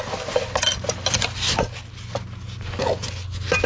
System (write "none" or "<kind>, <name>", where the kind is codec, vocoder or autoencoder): none